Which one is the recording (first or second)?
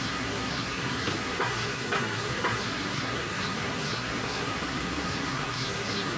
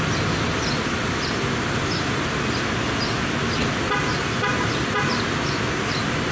second